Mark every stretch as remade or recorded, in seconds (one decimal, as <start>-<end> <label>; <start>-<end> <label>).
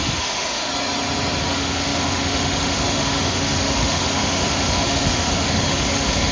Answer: 0.0-0.7 remade; 0.7-1.4 recorded; 1.4-6.3 remade